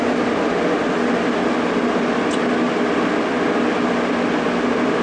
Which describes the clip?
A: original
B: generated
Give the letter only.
A